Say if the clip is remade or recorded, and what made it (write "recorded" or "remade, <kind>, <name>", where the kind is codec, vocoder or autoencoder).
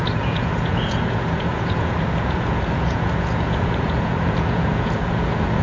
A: remade, vocoder, Vocos